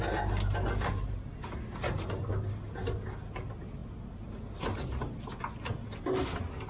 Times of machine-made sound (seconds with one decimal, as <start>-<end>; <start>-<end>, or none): none